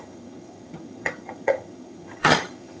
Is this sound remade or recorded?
remade